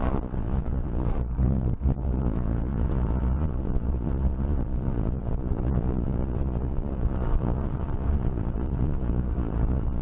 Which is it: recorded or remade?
remade